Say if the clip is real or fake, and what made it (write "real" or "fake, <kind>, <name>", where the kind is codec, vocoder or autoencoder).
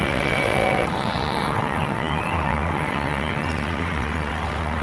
fake, vocoder, WaveNeXt